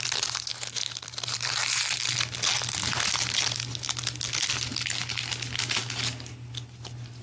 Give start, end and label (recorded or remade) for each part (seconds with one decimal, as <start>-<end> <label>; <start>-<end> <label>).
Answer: 0.0-7.2 recorded